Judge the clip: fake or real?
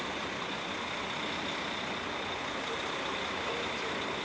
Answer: real